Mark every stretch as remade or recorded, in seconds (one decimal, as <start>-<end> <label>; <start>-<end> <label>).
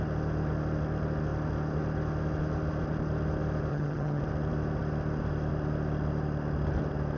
0.0-3.7 recorded; 3.7-4.2 remade; 4.2-7.2 recorded